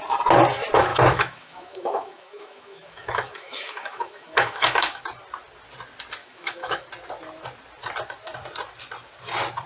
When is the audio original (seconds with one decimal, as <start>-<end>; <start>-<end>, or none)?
0.0-0.9; 5.0-6.2; 6.8-9.7